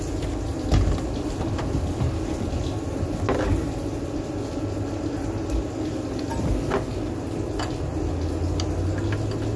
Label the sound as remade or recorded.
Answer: recorded